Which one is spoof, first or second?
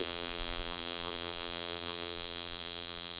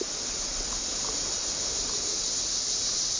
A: first